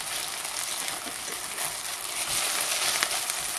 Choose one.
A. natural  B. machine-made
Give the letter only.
A